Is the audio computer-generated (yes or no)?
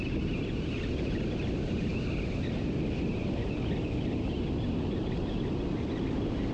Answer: no